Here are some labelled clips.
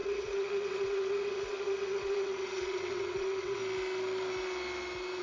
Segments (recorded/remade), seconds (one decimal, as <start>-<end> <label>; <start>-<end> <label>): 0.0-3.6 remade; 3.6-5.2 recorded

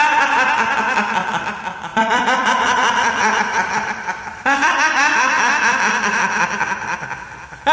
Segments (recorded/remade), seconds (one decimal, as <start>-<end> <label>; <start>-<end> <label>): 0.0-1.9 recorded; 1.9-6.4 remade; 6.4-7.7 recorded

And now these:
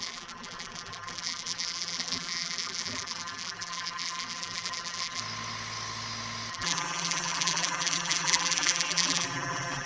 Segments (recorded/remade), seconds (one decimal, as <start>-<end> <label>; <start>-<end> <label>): 0.0-5.2 remade; 5.2-6.5 recorded; 6.5-9.9 remade

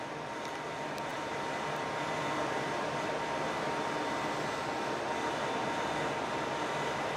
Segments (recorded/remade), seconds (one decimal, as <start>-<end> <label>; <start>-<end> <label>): 0.0-1.1 recorded; 1.1-3.1 remade; 3.1-7.2 recorded

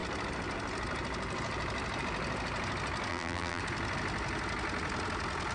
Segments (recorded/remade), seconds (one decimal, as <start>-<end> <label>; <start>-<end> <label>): 0.0-3.1 recorded; 3.1-3.6 remade; 3.6-5.5 recorded

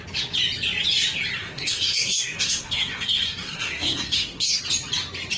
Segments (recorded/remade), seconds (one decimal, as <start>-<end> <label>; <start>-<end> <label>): 0.0-1.4 recorded; 1.4-4.6 remade; 4.6-5.4 recorded